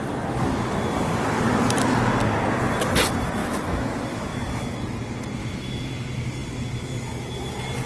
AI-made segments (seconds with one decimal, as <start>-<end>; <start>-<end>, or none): 3.4-4.2; 5.4-5.9